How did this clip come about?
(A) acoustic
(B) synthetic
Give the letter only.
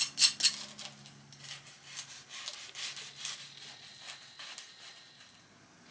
A